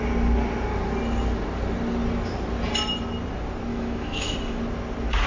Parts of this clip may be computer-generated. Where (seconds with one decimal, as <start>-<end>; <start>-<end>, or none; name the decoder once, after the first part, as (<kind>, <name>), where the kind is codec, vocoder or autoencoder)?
3.7-4.6 (autoencoder, DAC-VAE)